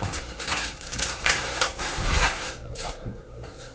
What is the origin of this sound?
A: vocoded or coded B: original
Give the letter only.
A